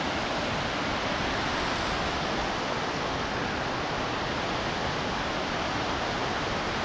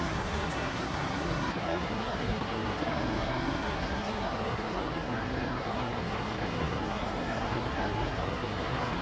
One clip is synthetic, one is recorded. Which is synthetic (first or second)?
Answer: second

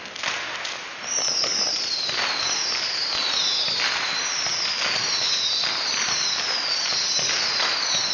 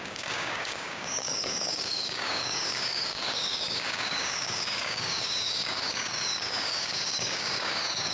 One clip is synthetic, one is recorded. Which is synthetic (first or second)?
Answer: second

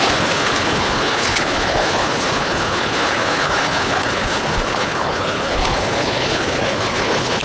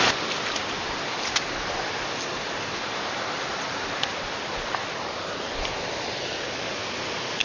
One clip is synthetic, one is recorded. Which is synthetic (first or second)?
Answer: first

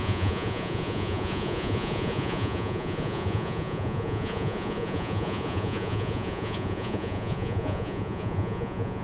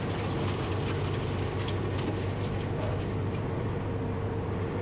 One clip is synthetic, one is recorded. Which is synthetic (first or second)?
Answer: first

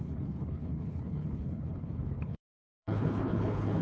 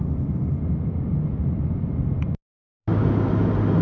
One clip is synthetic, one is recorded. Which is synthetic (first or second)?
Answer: first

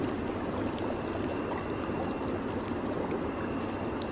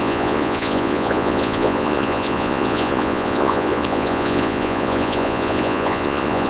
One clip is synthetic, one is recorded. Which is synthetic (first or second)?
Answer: second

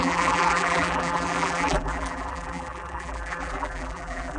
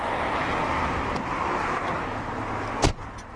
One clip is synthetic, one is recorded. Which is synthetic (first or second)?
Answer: first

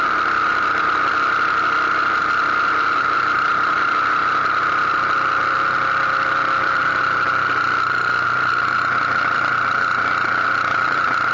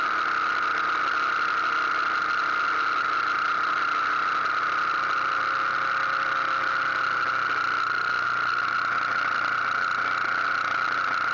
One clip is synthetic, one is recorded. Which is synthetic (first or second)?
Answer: first